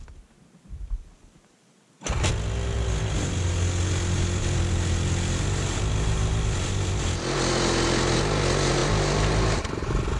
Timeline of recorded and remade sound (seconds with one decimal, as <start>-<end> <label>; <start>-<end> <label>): 0.0-10.2 recorded